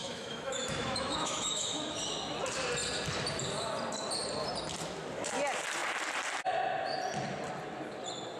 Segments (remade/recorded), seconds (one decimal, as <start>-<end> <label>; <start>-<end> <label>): 0.0-2.0 remade; 2.0-8.4 recorded